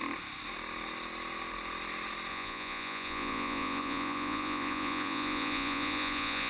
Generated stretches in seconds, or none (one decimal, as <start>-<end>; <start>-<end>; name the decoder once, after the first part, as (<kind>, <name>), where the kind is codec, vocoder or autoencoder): 2.3-6.5 (vocoder, Vocos)